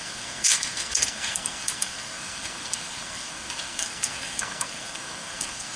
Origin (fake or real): fake